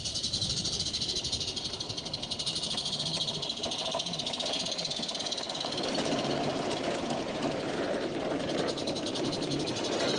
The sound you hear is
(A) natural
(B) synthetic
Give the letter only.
B